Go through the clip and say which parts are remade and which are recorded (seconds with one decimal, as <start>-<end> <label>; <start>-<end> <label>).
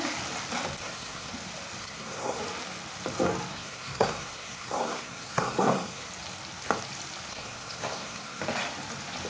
0.0-0.8 recorded; 0.8-1.3 remade; 1.3-1.8 recorded; 1.8-2.4 remade; 2.4-3.5 recorded; 3.5-6.1 remade; 6.1-7.3 recorded; 7.3-8.4 remade; 8.4-9.3 recorded